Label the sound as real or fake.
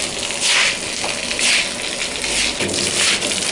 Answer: real